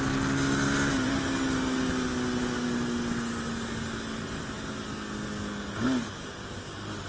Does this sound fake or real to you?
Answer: real